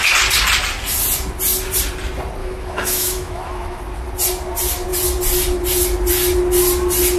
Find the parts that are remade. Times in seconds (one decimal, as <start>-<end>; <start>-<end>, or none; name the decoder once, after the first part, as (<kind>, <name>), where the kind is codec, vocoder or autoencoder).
2.4-3.8 (autoencoder, DAC-VAE)